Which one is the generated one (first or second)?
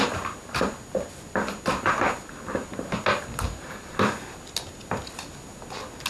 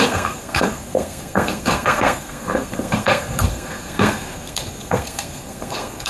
second